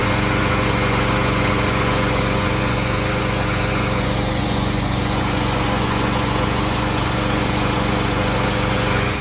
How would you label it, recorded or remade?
remade